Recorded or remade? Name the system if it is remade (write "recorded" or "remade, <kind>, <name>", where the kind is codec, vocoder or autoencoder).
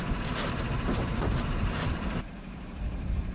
remade, vocoder, BigVGAN v2